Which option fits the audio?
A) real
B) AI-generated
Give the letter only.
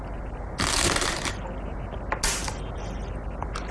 A